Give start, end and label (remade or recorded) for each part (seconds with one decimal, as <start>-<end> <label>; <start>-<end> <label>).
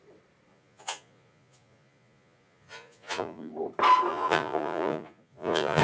0.0-0.5 recorded; 0.5-3.5 remade; 3.5-4.1 recorded; 4.1-5.8 remade